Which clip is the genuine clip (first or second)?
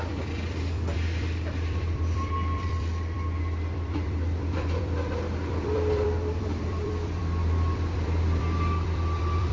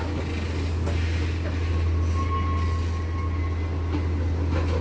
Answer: second